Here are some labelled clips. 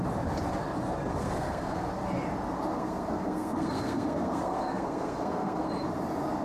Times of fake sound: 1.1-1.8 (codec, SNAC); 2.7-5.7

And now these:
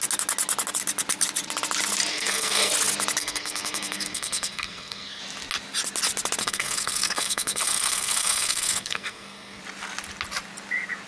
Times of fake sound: 2.1-2.7 (codec, SNAC); 3.2-5.2; 6.4-9.6

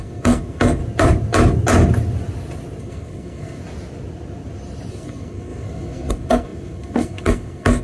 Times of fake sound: 0.0-0.8 (codec, SNAC); 2.8-3.6; 4.9-7.8

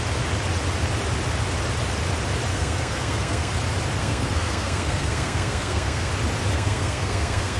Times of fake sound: 2.5-3.5 (codec, SNAC); 4.0-6.1; 6.5-7.6

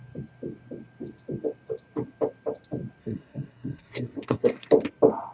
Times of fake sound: 3.0-4.7 (codec, SNAC)

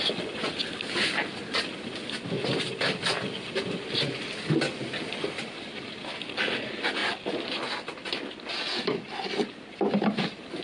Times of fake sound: none

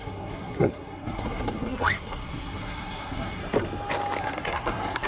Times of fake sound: 0.0-3.4 (codec, SNAC); 4.2-5.1